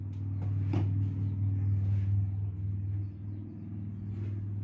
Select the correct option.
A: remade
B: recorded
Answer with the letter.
B